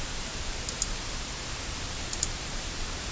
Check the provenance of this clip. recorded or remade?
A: remade